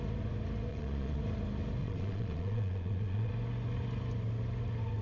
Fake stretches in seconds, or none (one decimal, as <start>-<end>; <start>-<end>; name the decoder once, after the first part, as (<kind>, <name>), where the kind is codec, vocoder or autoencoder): 0.7-1.2 (vocoder, Vocos); 1.8-3.3